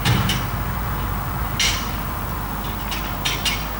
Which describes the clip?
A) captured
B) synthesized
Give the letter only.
A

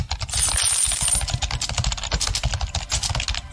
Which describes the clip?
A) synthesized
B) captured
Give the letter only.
B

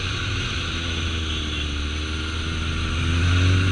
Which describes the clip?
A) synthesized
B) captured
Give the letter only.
B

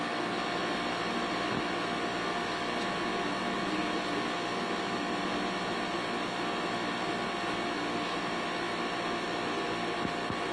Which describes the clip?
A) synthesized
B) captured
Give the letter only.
B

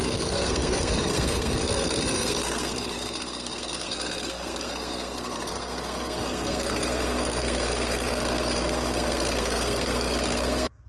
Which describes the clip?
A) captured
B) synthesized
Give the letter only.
B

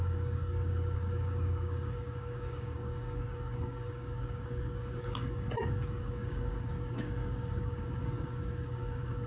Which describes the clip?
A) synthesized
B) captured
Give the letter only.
A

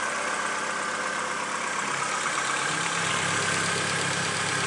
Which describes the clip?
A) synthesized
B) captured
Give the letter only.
B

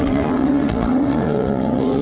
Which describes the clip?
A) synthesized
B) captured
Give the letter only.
A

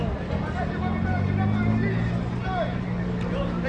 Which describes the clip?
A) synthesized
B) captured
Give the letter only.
B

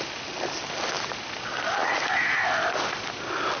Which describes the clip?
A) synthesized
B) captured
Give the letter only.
B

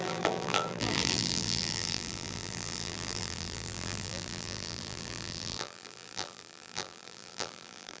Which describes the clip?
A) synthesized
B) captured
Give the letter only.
A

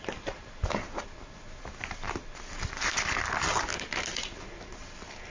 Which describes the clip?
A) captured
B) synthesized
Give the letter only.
A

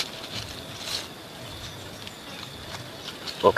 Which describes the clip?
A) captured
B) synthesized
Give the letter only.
A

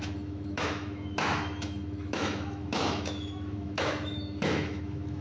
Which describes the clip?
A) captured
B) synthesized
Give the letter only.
B